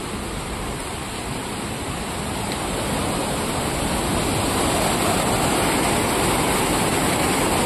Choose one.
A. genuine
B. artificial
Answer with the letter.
A